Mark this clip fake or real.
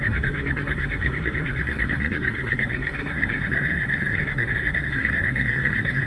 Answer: fake